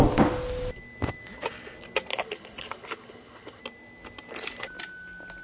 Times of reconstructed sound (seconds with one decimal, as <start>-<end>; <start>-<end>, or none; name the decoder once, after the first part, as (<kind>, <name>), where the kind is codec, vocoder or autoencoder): 2.1-3.6 (codec, HILCodec)